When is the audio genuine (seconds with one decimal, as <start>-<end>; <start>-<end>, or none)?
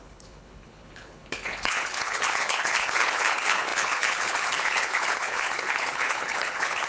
none